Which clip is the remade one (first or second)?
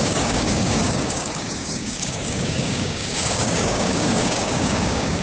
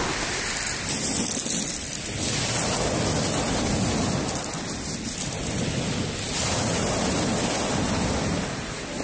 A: first